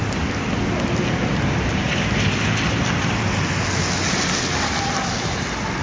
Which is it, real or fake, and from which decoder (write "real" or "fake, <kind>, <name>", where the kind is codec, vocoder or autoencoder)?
real